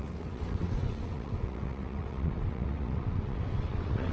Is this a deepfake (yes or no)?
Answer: yes